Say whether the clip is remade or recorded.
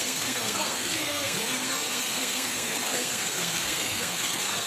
remade